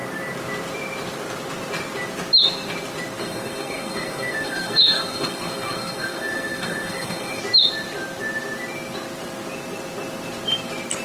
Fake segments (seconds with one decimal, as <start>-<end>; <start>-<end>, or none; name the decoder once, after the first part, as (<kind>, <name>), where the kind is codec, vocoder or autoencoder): 3.2-7.4 (codec, SNAC)